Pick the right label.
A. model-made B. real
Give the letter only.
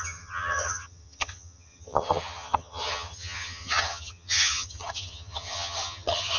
A